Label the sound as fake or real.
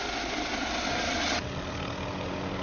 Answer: real